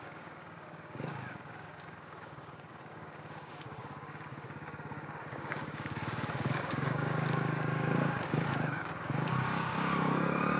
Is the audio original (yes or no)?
no